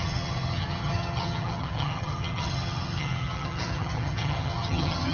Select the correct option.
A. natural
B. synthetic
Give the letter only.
B